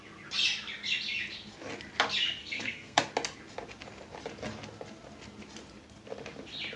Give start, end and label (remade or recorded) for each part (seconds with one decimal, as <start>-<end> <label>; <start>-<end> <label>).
0.0-2.4 recorded; 2.4-3.1 remade; 3.1-6.8 recorded